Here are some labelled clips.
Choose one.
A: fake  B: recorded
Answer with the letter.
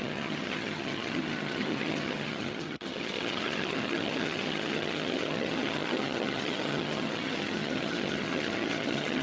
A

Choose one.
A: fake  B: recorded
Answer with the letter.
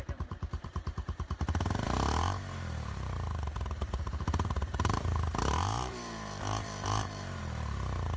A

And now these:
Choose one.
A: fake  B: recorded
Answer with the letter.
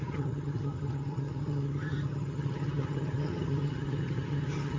A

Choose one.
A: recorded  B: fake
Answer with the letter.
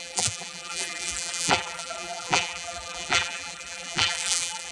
B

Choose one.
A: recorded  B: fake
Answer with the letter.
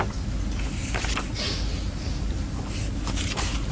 A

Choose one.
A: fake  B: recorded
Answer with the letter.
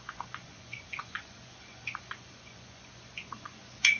A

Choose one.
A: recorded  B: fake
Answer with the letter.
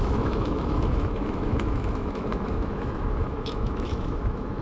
B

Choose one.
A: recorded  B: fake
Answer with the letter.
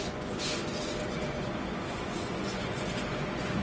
B